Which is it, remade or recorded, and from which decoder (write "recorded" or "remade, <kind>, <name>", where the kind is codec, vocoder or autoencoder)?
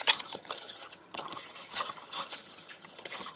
remade, vocoder, HiFi-GAN